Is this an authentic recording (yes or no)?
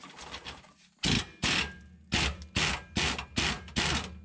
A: yes